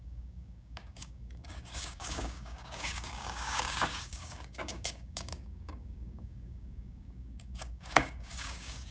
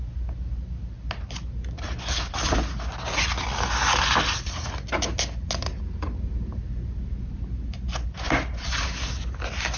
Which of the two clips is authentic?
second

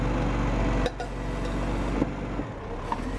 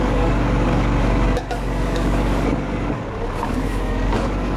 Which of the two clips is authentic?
first